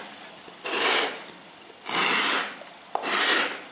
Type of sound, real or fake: fake